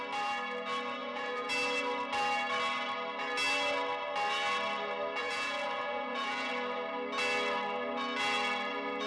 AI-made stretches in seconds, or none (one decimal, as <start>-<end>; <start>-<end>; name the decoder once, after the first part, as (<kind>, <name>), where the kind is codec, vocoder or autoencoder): 1.0-1.5 (vocoder, Vocos); 5.2-6.5